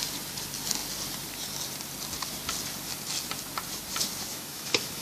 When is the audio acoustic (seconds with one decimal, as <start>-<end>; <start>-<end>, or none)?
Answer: 0.0-4.3